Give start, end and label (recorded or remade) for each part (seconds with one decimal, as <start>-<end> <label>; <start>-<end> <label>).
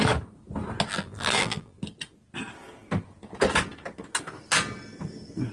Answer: 0.0-0.9 recorded; 0.9-1.8 remade; 1.8-5.5 recorded